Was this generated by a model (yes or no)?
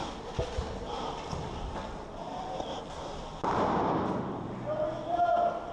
no